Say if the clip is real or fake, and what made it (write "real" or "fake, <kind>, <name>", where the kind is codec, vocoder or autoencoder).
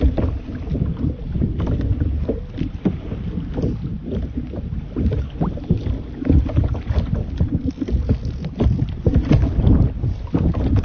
real